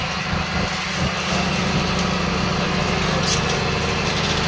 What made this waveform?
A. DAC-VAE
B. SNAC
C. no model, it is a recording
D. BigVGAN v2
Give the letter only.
C